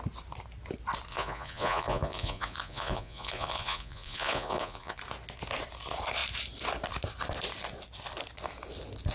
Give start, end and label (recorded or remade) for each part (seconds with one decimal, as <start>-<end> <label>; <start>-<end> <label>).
0.0-1.1 recorded; 1.1-5.0 remade; 5.0-9.1 recorded